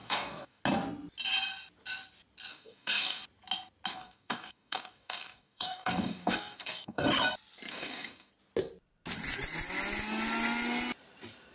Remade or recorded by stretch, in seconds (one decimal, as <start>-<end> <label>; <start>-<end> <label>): 0.0-0.6 remade; 0.6-2.5 recorded; 2.5-3.2 remade; 3.2-3.9 recorded; 3.9-7.0 remade; 7.0-7.7 recorded; 7.7-8.3 remade; 8.3-11.5 recorded